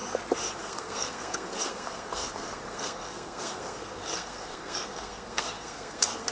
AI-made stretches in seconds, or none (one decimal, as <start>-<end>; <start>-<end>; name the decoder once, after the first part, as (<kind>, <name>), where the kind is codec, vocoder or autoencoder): 0.6-6.3 (codec, SNAC)